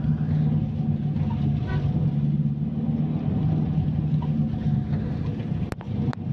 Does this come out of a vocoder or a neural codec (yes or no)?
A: no